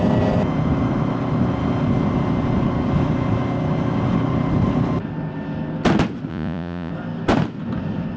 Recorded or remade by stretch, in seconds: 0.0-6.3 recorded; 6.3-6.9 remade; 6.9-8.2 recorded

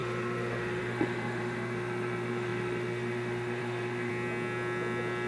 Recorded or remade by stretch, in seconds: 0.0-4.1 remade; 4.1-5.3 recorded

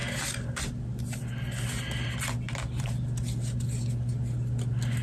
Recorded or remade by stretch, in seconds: 0.0-5.0 recorded

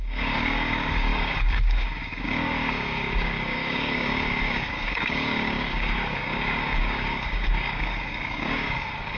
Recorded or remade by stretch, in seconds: 0.0-9.2 remade

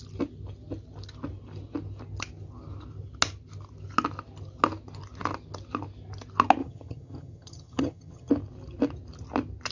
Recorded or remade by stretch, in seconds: 0.0-6.6 recorded; 6.6-8.3 remade; 8.3-9.7 recorded

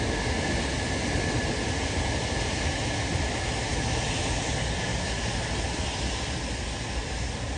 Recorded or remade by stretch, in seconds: 0.0-7.6 recorded